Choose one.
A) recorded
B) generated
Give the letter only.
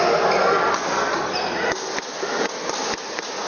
A